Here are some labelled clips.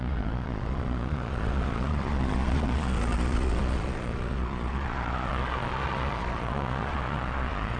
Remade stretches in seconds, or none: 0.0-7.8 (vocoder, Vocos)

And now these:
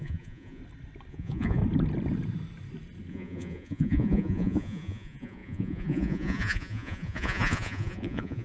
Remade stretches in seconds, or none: 0.0-0.6 (vocoder, Vocos); 1.1-1.6; 3.1-8.4

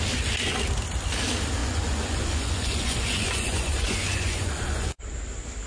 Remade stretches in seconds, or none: 1.6-5.0 (vocoder, Vocos)

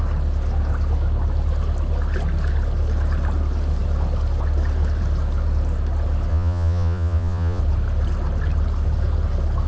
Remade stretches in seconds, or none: 6.3-7.6 (vocoder, Vocos)

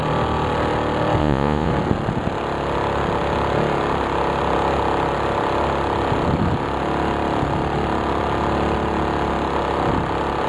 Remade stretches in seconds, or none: 1.2-1.7 (vocoder, Vocos)

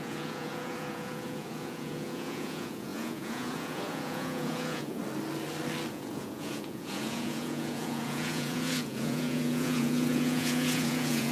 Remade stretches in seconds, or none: 0.0-5.0 (vocoder, Vocos); 5.9-11.3

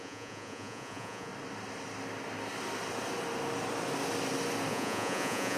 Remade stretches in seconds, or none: 0.0-1.3 (vocoder, Vocos); 4.7-5.6